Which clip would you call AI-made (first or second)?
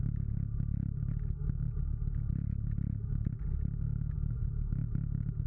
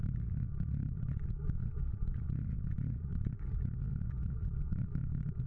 second